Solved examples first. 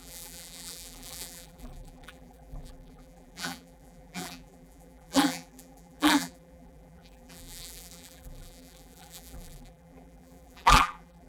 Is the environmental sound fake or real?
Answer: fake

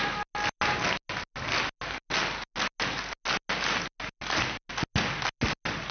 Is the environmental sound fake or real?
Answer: real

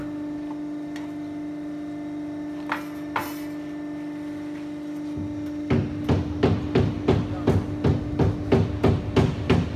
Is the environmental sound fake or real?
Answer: real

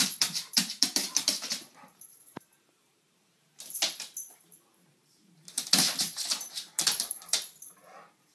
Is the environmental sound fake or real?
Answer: fake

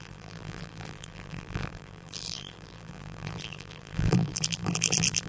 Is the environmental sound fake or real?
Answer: fake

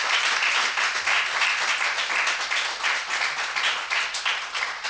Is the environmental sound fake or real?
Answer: real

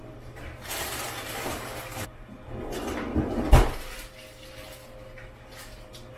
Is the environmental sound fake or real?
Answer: real